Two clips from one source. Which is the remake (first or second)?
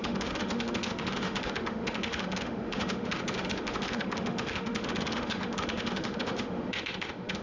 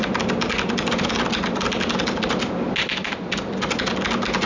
first